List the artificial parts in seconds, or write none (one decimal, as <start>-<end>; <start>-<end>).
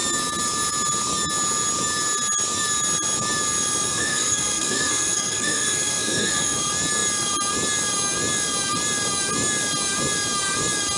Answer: 3.9-6.6